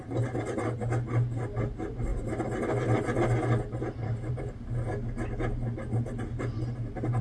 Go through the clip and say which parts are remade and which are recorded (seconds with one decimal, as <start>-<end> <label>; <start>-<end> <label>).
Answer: 0.0-7.2 recorded